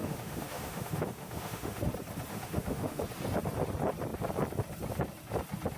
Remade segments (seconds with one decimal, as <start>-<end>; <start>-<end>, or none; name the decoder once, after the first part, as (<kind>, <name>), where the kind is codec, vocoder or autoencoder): 0.0-1.9 (autoencoder, DAC-VAE); 2.3-3.0